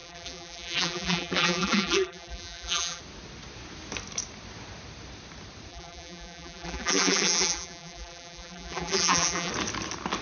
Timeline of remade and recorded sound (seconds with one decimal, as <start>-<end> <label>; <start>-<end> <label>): 0.0-3.0 remade; 3.0-5.7 recorded; 5.7-9.5 remade; 9.5-10.2 recorded

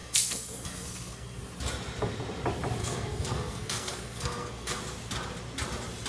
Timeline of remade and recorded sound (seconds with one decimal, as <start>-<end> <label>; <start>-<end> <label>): 0.0-1.4 remade; 1.4-2.8 recorded; 2.8-4.8 remade; 4.8-6.1 recorded

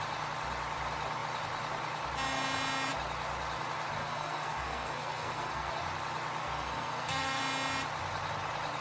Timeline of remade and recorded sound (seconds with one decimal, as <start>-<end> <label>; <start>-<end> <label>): 0.0-4.0 recorded; 4.0-5.7 remade; 5.7-6.4 recorded; 6.4-7.4 remade; 7.4-8.8 recorded

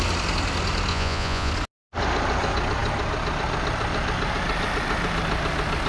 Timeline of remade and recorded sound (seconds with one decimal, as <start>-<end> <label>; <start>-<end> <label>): 0.0-0.9 recorded; 0.9-1.5 remade; 1.5-5.9 recorded

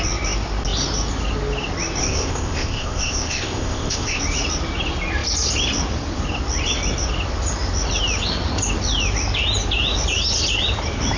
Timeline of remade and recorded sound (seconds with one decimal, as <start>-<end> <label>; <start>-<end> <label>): 0.0-2.0 recorded; 2.0-4.2 remade; 4.2-11.2 recorded